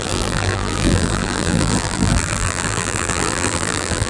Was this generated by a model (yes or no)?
yes